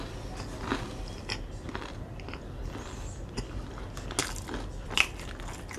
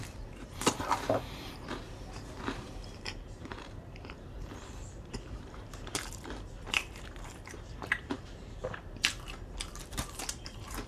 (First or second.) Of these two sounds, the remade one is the second